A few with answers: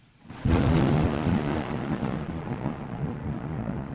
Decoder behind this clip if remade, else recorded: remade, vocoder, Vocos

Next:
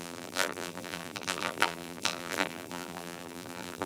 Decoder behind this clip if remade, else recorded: remade, vocoder, BigVGAN v2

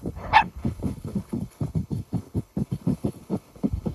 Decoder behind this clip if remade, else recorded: remade, codec, HILCodec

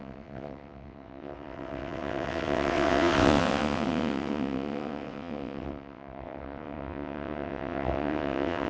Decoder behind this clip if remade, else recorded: remade, vocoder, WaveNeXt